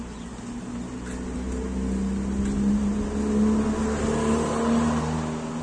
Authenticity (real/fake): real